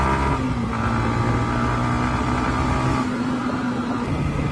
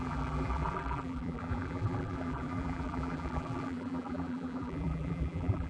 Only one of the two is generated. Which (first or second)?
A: second